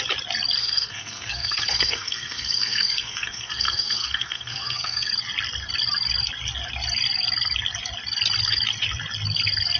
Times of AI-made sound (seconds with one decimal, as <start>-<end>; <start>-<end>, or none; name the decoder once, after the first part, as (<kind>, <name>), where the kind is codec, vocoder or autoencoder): 0.6-5.1 (codec, SNAC)